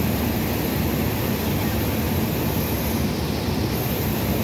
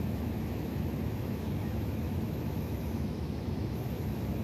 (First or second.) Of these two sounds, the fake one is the second